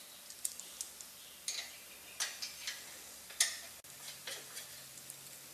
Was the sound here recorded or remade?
recorded